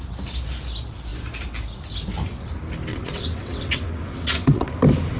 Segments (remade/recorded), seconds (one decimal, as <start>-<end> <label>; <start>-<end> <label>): 0.0-2.9 recorded; 2.9-4.7 remade; 4.7-5.2 recorded